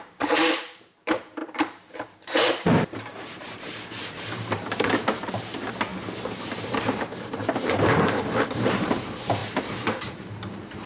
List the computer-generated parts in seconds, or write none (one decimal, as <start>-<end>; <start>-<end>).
0.0-5.9; 7.0-10.9